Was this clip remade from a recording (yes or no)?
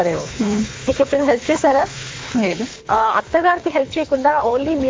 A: yes